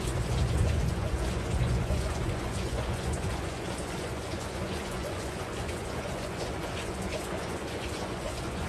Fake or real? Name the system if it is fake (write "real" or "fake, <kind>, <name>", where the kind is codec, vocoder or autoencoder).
fake, vocoder, Vocos